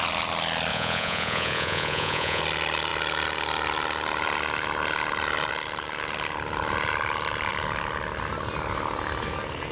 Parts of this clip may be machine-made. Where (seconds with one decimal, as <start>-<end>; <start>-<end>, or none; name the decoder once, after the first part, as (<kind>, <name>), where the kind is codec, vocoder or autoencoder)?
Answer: 0.7-2.4 (vocoder, Vocos)